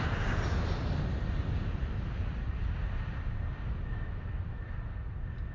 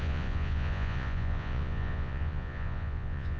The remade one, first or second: second